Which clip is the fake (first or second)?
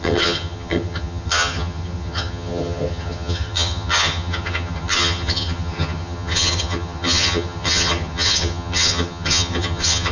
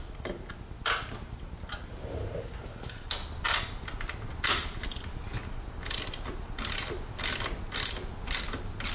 first